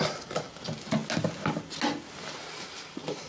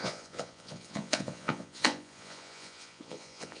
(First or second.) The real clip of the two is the first